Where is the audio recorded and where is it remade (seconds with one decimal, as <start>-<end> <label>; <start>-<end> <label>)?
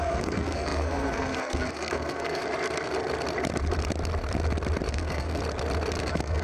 0.0-2.4 remade; 2.4-4.9 recorded; 4.9-5.4 remade; 5.4-6.0 recorded; 6.0-6.4 remade